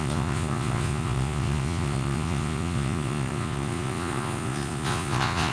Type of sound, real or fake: fake